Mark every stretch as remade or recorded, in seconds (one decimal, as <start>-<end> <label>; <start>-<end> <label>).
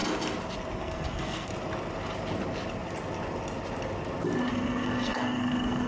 0.0-0.8 recorded; 0.8-1.5 remade; 1.5-4.5 recorded; 4.5-5.9 remade